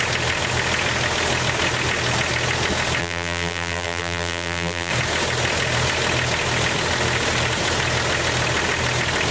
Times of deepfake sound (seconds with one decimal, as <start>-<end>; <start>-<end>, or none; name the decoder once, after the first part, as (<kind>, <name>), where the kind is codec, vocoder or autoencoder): 3.0-4.9 (vocoder, BigVGAN v2)